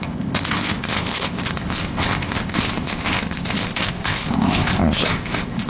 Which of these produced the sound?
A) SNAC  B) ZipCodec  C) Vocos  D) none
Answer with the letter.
B